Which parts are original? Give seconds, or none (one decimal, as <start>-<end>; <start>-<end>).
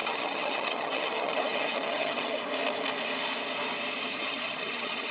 2.4-4.1